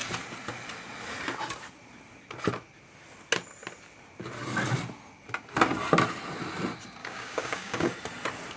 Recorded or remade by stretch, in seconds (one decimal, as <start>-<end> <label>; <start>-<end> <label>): 0.0-7.0 recorded; 7.0-7.9 remade; 7.9-8.6 recorded